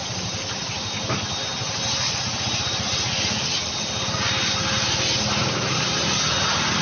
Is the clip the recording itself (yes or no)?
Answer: yes